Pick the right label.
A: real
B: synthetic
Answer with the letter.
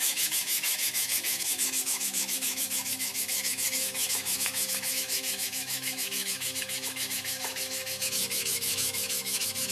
B